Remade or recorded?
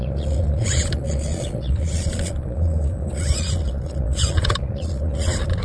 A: remade